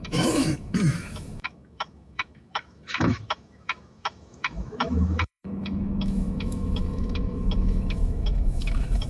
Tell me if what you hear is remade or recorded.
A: remade